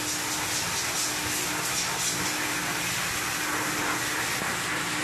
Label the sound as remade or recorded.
recorded